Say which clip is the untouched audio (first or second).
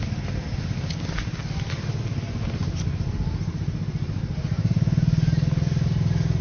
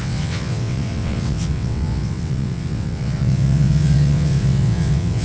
first